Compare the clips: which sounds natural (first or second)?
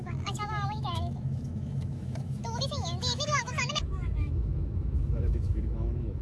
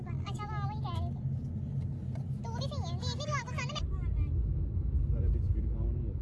second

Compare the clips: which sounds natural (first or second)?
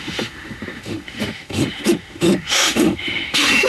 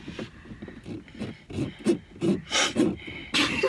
second